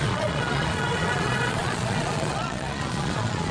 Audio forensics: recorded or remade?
remade